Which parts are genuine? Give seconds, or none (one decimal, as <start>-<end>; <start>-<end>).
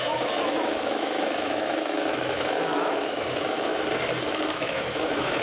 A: 3.7-4.3